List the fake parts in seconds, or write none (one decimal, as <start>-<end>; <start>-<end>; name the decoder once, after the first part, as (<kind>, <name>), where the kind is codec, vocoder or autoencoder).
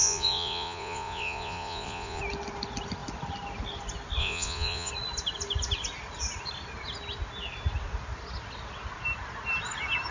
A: 0.0-2.2 (vocoder, Vocos); 4.2-4.9